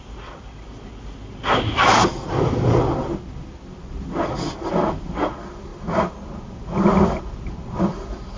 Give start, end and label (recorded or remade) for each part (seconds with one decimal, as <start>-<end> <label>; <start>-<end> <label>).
0.0-8.4 recorded

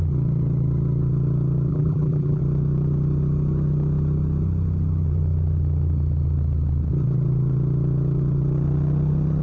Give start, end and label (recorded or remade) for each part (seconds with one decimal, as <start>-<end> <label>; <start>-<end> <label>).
0.0-1.7 recorded; 1.7-2.4 remade; 2.4-9.4 recorded

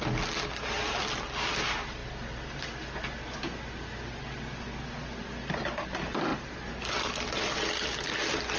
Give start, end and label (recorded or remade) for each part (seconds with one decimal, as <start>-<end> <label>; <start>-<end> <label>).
0.0-8.6 recorded

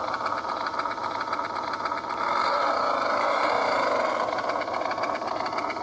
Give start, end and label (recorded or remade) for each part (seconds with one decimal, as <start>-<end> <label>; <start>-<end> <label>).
0.0-5.8 recorded

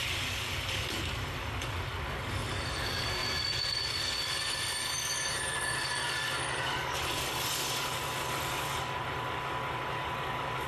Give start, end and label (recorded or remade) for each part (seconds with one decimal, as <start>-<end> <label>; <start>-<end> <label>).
0.0-10.7 remade